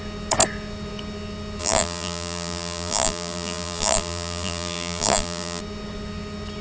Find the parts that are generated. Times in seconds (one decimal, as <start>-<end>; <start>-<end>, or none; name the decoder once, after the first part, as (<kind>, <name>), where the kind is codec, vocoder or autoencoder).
1.6-5.6 (vocoder, BigVGAN v2)